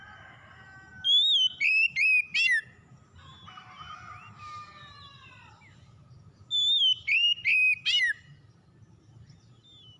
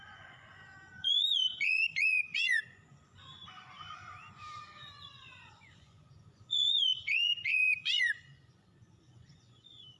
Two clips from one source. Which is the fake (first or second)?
second